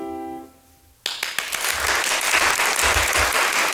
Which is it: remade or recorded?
recorded